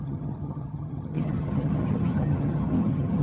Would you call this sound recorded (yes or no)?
no